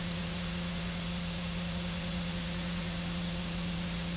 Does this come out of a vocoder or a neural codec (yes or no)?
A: yes